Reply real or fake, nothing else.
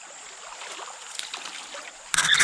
real